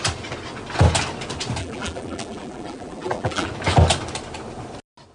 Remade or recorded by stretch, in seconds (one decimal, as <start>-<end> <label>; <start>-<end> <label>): 0.0-1.6 recorded; 1.6-3.5 remade; 3.5-5.1 recorded